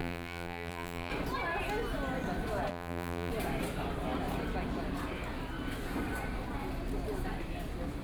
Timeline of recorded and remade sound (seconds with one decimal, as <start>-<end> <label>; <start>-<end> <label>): 0.0-1.1 remade; 1.1-2.7 recorded; 2.7-3.3 remade; 3.3-8.0 recorded